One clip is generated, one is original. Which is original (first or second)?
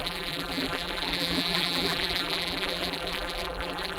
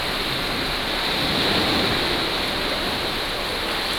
second